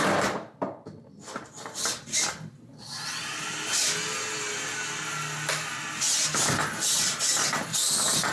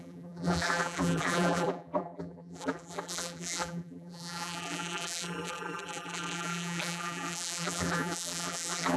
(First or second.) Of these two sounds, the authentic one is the first